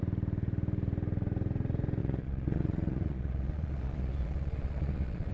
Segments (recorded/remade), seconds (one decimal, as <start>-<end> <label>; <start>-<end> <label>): 0.0-2.0 recorded; 2.0-5.3 remade